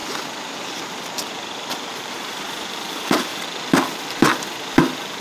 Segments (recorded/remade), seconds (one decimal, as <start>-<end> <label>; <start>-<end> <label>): 0.0-0.8 recorded; 0.8-3.3 remade; 3.3-4.8 recorded; 4.8-5.2 remade